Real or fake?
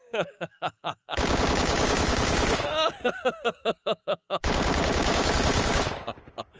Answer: fake